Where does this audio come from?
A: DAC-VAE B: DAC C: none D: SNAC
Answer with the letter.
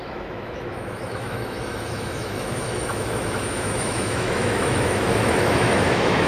A